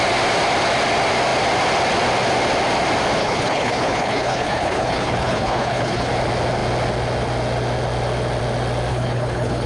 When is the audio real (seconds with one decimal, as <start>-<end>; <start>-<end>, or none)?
0.0-3.2; 6.1-8.9